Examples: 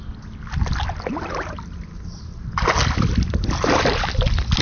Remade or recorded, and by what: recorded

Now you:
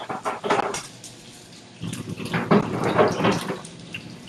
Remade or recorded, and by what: recorded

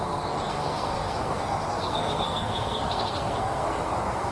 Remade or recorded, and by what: remade, codec, SNAC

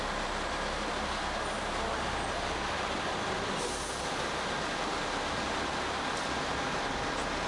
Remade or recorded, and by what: recorded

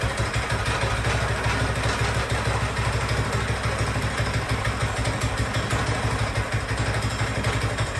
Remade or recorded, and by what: recorded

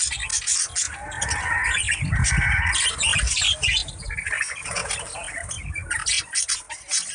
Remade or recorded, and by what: recorded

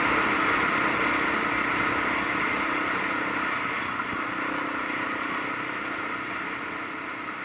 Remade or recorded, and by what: recorded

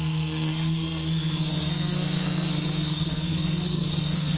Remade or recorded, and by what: remade, codec, SNAC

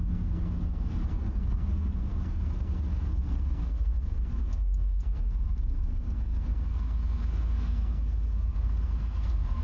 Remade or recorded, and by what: remade, codec, SNAC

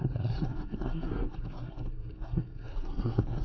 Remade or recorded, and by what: remade, codec, SNAC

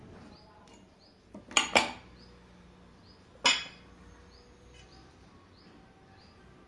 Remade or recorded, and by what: recorded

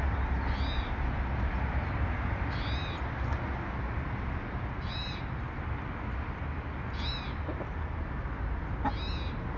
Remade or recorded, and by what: recorded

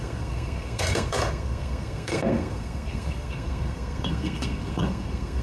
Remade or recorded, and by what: remade, codec, SNAC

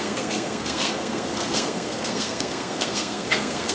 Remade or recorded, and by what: remade, codec, SNAC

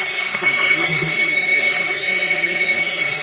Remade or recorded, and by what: remade, codec, SNAC